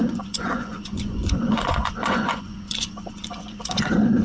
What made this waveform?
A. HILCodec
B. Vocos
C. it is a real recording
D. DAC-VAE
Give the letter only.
B